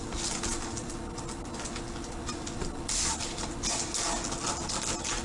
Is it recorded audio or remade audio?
recorded